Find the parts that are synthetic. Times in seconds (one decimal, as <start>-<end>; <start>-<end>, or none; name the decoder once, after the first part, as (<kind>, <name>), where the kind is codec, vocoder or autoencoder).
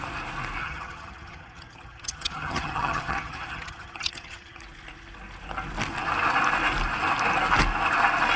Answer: 0.6-4.6 (vocoder, HiFi-GAN)